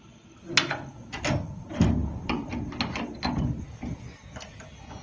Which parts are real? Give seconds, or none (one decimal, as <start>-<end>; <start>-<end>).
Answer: 0.0-5.0